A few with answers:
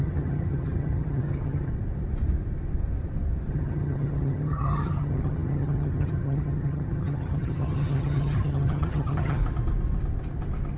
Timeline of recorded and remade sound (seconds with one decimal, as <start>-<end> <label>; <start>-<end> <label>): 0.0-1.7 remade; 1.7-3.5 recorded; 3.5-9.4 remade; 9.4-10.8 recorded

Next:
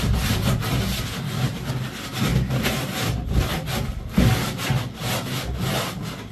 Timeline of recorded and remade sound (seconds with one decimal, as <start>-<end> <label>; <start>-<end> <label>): 0.0-6.3 recorded

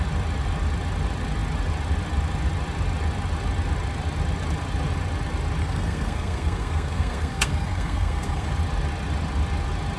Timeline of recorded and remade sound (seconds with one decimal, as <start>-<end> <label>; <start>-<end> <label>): 0.0-5.6 recorded; 5.6-8.5 remade; 8.5-10.0 recorded

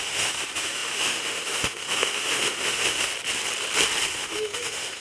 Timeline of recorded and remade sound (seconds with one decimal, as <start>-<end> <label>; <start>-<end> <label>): 0.0-3.1 remade; 3.1-4.1 recorded; 4.1-5.0 remade

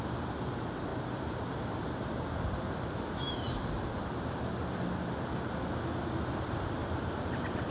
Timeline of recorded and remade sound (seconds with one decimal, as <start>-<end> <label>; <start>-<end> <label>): 0.0-0.9 recorded; 0.9-5.4 remade; 5.4-6.8 recorded; 6.8-7.7 remade

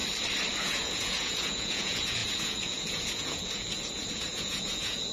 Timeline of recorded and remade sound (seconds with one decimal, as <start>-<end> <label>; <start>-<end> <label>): 0.0-0.6 recorded; 0.6-5.1 remade

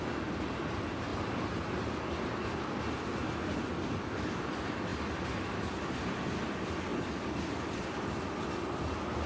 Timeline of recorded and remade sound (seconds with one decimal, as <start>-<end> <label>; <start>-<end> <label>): 0.0-9.3 recorded